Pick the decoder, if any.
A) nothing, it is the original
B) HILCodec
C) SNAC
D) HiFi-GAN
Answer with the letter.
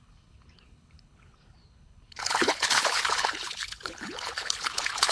B